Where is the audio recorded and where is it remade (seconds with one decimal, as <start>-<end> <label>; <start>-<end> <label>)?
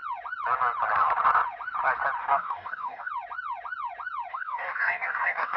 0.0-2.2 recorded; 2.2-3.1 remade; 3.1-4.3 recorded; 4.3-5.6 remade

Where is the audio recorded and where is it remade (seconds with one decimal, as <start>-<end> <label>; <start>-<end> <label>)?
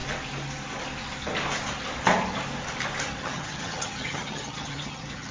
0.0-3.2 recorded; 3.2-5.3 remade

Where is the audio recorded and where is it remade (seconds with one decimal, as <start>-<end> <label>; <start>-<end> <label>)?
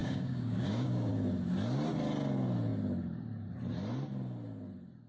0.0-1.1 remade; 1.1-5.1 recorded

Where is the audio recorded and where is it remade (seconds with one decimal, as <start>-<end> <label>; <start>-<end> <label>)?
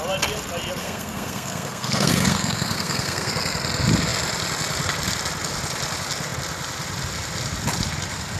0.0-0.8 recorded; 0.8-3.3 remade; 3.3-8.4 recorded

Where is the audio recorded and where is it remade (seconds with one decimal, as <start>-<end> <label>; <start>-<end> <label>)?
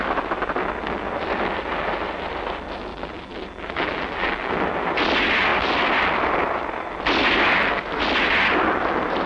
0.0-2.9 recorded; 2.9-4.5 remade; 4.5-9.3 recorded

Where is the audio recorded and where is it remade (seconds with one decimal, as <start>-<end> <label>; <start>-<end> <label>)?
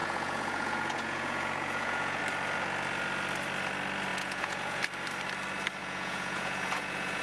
0.0-2.2 remade; 2.2-4.1 recorded; 4.1-4.8 remade; 4.8-5.8 recorded; 5.8-7.2 remade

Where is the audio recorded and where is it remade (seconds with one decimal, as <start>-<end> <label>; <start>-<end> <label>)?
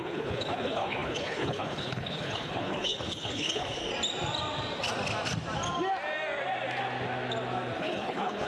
0.0-3.8 remade; 3.8-7.8 recorded; 7.8-8.5 remade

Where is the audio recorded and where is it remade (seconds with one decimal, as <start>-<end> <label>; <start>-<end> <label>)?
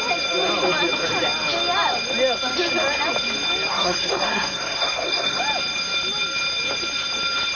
0.0-3.7 recorded; 3.7-5.4 remade; 5.4-7.6 recorded